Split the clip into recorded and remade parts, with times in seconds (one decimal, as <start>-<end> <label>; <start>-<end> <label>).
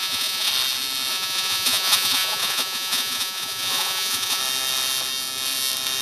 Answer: 0.0-0.5 remade; 0.5-1.1 recorded; 1.1-4.4 remade; 4.4-6.0 recorded